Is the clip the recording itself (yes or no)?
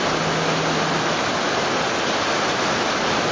yes